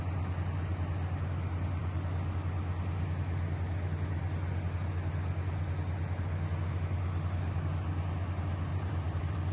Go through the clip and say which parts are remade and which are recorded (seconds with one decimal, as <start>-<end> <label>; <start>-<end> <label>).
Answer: 0.0-8.7 recorded; 8.7-9.5 remade